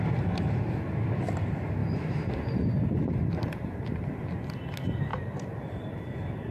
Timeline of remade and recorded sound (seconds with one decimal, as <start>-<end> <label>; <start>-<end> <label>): 0.0-1.8 recorded; 1.8-4.2 remade; 4.2-5.1 recorded; 5.1-6.5 remade